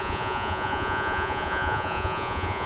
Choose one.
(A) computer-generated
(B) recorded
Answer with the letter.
A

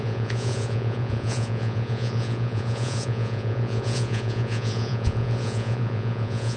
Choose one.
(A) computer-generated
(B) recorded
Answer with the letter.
A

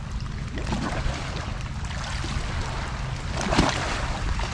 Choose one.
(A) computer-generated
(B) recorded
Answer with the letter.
B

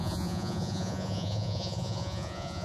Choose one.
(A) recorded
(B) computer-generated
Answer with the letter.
B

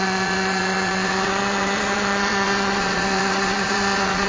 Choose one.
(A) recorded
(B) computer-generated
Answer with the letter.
B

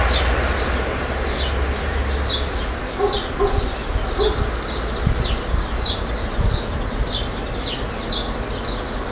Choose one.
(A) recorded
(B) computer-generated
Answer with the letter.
A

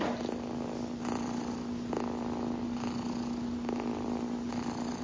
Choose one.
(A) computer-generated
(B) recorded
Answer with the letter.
B